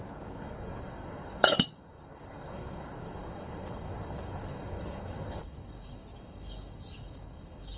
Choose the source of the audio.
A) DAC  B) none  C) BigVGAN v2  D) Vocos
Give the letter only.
A